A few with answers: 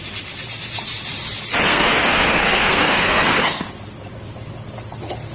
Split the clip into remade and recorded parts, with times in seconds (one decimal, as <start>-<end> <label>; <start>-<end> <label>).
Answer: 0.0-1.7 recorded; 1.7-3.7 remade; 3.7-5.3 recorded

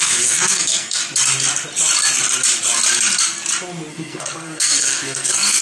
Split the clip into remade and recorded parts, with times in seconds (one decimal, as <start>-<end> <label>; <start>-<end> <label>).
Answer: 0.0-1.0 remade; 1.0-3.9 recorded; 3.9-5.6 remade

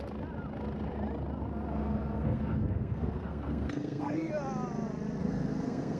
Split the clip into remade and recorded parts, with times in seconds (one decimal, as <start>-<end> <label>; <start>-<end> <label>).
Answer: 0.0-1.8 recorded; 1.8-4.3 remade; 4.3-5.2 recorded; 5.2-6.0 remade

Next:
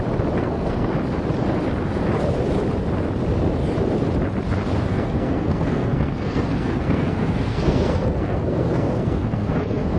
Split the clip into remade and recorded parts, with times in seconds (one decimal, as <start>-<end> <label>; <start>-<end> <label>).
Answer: 0.0-0.4 recorded; 0.4-0.9 remade; 0.9-4.9 recorded; 4.9-10.0 remade